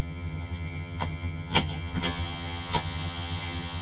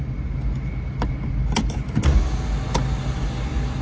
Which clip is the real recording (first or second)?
second